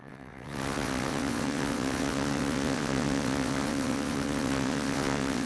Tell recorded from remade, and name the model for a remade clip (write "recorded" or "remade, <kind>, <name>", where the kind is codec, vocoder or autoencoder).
remade, vocoder, WaveNeXt